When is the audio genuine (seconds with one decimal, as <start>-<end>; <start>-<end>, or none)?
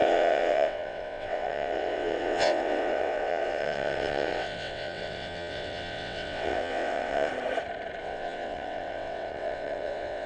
7.3-8.0